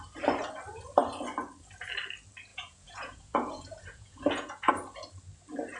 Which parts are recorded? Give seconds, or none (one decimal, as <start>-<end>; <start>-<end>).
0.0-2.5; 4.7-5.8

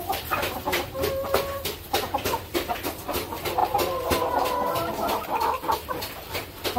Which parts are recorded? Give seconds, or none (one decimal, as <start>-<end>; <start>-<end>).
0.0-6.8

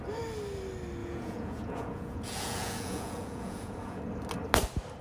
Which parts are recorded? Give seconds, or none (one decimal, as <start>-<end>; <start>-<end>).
0.0-1.0; 4.0-5.0

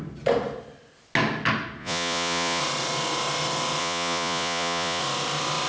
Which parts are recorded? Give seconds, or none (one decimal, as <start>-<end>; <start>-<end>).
0.0-1.8; 2.6-3.8; 5.0-5.7

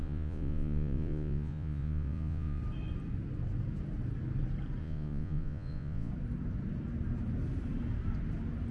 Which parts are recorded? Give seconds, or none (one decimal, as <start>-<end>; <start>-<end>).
2.6-4.8; 6.1-8.7

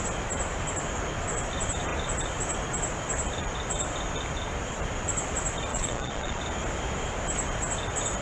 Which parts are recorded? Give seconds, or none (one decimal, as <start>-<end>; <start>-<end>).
0.0-5.7; 6.4-8.2

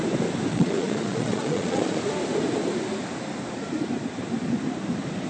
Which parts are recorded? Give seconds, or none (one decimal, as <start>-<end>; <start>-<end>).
0.0-0.5; 2.0-5.3

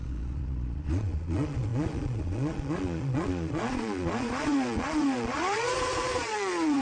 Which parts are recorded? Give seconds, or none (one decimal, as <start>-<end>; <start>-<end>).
none